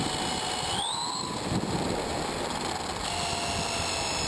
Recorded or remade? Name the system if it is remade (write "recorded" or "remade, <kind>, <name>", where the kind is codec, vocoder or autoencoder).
recorded